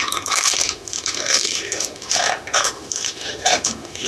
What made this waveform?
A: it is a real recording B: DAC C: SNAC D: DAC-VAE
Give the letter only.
D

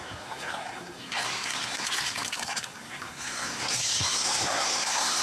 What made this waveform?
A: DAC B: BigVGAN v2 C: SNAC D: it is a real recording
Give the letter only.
C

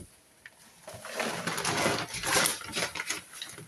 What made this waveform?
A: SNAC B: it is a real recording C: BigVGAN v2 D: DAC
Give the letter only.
B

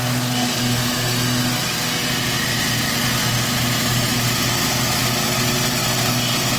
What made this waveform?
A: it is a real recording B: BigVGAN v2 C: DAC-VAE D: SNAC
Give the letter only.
A